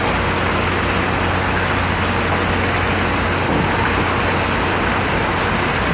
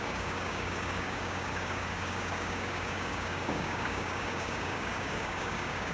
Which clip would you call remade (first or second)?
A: second